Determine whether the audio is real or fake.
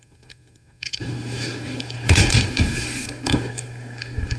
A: fake